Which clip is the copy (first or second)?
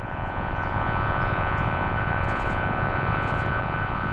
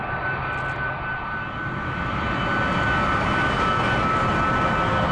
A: first